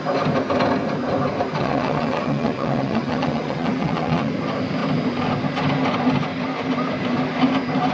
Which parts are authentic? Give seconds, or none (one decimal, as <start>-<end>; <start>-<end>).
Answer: 0.0-1.6; 4.3-7.9

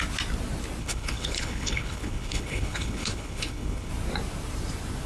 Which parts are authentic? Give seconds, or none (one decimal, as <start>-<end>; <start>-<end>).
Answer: 0.0-0.8; 3.9-5.1

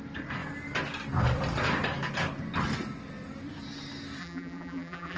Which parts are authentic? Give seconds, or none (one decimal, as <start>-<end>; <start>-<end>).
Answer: 0.0-4.2

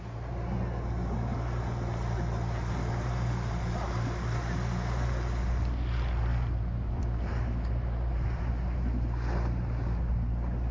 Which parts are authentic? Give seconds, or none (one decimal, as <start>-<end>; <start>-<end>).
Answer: 0.0-10.7

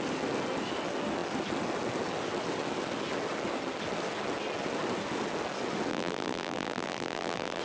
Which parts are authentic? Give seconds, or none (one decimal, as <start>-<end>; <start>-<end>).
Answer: 0.0-5.9

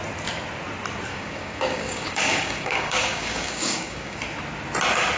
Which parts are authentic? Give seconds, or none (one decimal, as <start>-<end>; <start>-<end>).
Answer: 0.0-1.1; 4.2-5.2

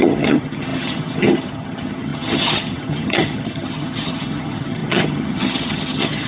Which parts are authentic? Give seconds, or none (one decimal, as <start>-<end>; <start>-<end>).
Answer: none